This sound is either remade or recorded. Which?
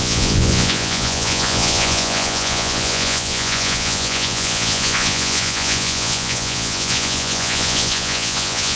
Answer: remade